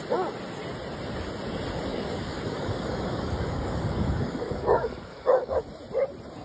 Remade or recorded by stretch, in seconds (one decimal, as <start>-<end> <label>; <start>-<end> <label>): 0.0-1.9 recorded; 1.9-5.6 remade; 5.6-6.4 recorded